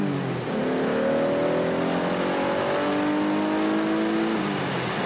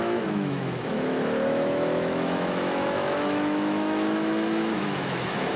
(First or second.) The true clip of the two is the first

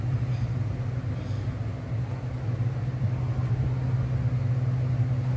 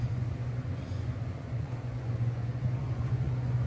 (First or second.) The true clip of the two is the first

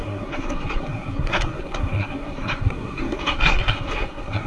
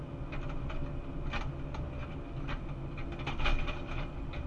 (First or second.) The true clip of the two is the second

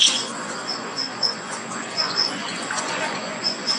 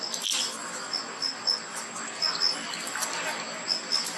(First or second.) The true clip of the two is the second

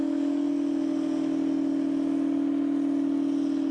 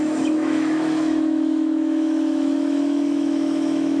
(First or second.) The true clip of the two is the first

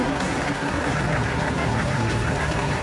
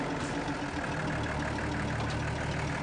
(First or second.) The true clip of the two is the second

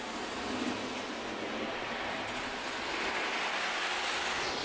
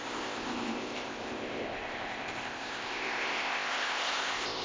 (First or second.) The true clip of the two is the first